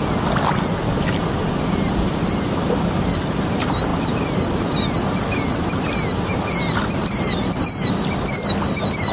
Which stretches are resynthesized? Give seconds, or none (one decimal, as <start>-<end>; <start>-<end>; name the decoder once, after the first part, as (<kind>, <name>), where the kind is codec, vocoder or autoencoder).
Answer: none